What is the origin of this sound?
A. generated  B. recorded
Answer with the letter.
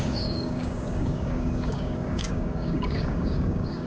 A